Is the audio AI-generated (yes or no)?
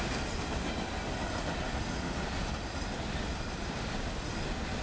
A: no